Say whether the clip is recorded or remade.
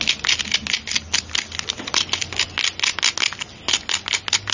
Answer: recorded